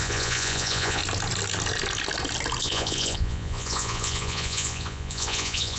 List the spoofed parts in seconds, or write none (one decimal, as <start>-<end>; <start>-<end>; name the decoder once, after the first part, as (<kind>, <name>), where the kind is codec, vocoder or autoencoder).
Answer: 0.0-1.0 (vocoder, Vocos); 2.6-5.8